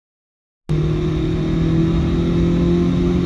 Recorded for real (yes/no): yes